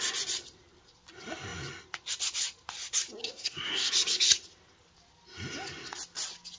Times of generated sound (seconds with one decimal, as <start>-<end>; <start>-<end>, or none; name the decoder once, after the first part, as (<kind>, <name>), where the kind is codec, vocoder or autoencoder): 3.2-3.9 (codec, SNAC)